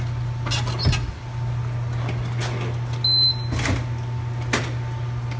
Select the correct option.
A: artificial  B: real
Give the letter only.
B